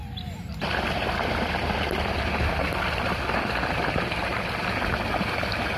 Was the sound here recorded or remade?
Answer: recorded